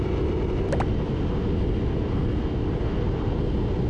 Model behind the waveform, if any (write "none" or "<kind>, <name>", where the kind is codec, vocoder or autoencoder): none